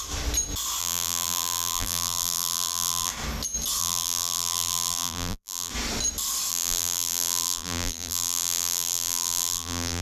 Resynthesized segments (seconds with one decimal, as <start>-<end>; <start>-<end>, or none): 0.8-3.1; 3.8-5.7; 6.5-10.0